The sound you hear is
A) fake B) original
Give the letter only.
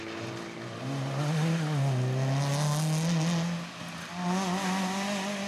B